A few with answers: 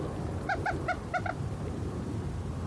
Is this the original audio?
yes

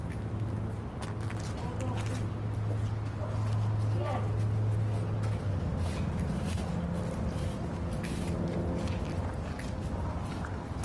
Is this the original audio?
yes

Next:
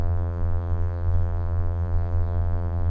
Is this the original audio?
no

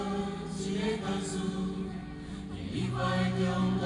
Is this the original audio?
yes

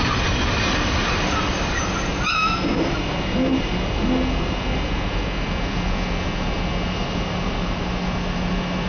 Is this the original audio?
yes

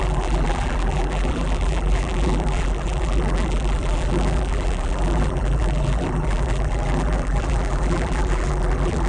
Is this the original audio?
no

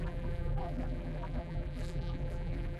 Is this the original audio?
no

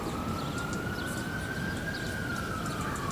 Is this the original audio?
yes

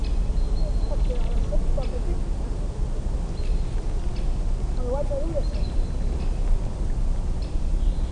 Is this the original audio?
yes